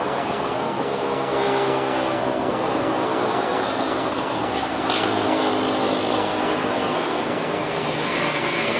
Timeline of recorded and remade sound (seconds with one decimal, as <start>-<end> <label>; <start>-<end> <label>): 0.0-5.5 remade; 5.5-6.1 recorded; 6.1-8.8 remade